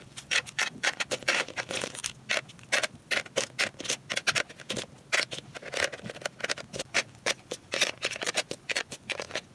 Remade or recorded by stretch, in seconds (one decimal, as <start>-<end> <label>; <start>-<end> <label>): 0.0-2.0 remade; 2.0-6.7 recorded; 6.7-9.5 remade